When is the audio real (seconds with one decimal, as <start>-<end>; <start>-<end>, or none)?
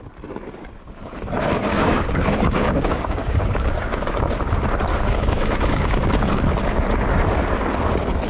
0.0-1.7; 4.2-4.9; 6.4-8.3